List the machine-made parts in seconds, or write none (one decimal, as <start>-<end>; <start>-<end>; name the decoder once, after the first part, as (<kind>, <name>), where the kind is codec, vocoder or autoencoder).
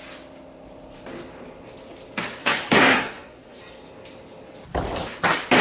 2.4-3.6 (codec, SNAC)